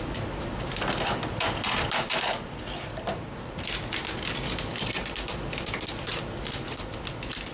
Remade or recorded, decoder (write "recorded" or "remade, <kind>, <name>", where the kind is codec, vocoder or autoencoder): recorded